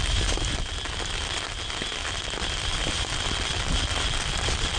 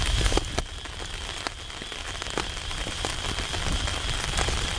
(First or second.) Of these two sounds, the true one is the first